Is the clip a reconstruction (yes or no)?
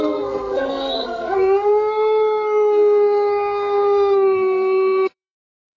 yes